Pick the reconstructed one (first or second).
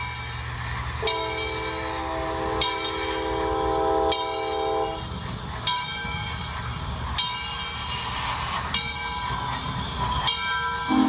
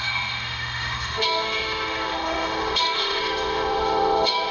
second